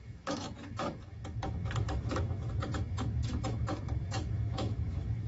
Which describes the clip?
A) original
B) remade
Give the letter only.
B